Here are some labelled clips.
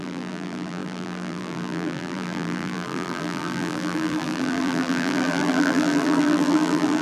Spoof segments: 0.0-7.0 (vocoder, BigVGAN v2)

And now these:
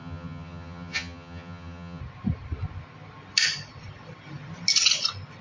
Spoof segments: 0.0-2.0 (vocoder, HiFi-GAN)

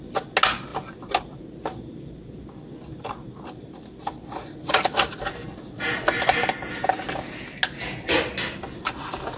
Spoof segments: none

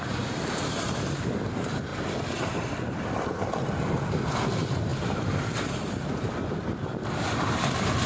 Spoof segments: 1.9-3.0 (vocoder, BigVGAN v2); 4.9-6.3

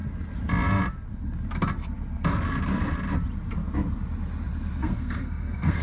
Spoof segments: 4.8-5.8 (codec, SNAC)

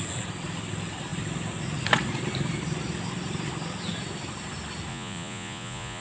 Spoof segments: 4.9-6.0 (vocoder, Vocos)

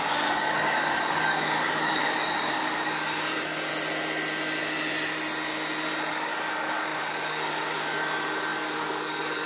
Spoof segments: 0.0-3.7 (codec, DAC); 6.1-9.5